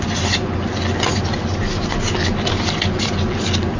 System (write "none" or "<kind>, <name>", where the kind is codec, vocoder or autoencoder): none